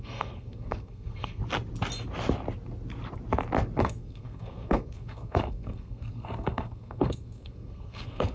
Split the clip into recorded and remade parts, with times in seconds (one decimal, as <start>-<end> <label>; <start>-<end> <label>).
0.0-1.4 remade; 1.4-3.8 recorded; 3.8-8.3 remade